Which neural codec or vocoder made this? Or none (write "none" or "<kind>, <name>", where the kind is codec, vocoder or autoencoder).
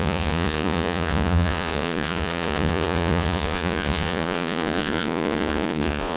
vocoder, Vocos